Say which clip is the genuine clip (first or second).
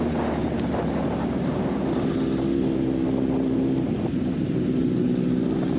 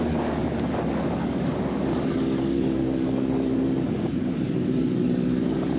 first